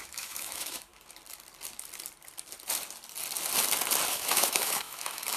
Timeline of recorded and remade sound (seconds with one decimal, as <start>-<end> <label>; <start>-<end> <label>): 0.0-0.9 remade; 0.9-4.1 recorded; 4.1-5.4 remade